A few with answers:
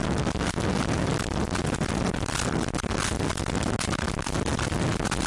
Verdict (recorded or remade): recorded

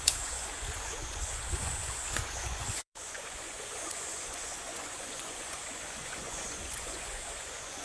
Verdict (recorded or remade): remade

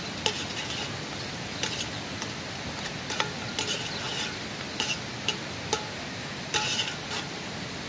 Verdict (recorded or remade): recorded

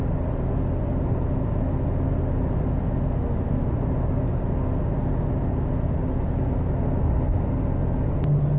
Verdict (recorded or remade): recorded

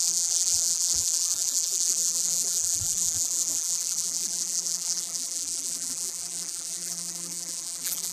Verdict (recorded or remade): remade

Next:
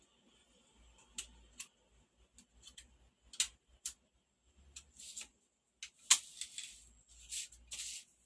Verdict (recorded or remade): recorded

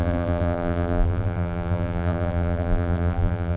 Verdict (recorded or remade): remade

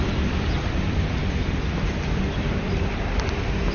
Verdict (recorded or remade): remade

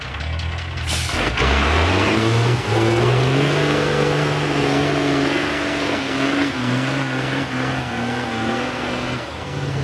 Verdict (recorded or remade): remade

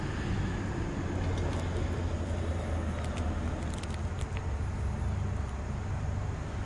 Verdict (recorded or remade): recorded